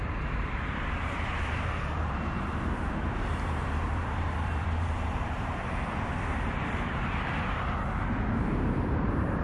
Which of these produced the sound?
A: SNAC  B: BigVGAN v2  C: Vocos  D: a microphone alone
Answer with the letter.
B